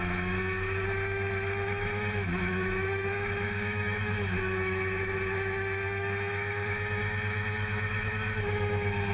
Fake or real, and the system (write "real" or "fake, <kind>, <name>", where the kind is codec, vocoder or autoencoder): fake, autoencoder, DAC-VAE